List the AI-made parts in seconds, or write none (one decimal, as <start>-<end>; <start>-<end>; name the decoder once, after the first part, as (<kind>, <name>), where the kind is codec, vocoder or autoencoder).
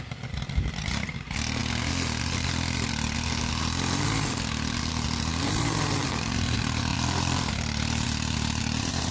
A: 0.0-1.6 (vocoder, BigVGAN v2); 6.3-9.1